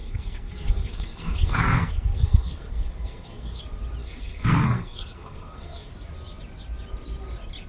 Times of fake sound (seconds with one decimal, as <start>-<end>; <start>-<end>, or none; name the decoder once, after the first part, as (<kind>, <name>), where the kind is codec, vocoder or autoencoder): 0.0-3.6 (codec, SNAC); 4.0-5.9